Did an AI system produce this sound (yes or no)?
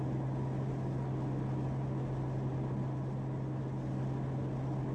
no